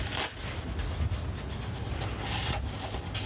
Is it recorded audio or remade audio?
recorded